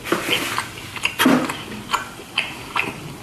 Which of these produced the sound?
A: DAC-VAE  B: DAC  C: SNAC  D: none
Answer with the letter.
D